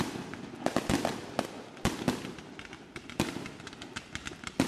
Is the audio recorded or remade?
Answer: recorded